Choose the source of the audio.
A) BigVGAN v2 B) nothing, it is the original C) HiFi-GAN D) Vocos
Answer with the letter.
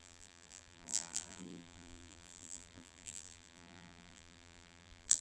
A